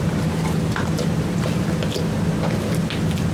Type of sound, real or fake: real